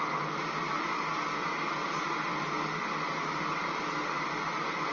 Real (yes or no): yes